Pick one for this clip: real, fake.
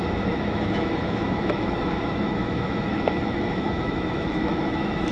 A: fake